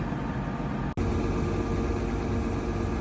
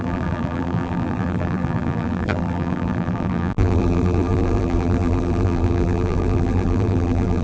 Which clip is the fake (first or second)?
second